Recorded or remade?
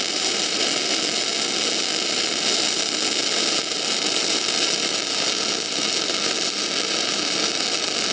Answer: recorded